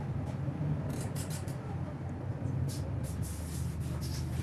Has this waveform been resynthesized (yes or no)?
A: no